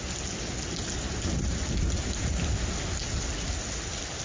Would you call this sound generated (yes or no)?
no